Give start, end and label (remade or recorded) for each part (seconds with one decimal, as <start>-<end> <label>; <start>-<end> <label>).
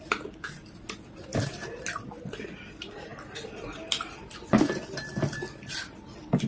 0.0-6.5 recorded